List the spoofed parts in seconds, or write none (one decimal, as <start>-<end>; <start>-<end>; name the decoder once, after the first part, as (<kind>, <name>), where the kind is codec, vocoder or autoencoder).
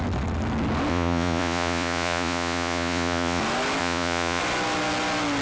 0.9-3.4 (vocoder, Vocos); 3.8-4.4